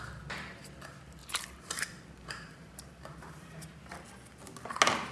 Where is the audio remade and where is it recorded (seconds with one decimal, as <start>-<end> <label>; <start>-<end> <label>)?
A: 0.0-1.2 recorded; 1.2-3.8 remade; 3.8-5.1 recorded